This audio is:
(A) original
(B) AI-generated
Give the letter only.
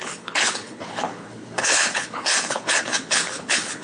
B